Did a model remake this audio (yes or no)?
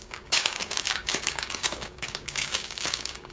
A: yes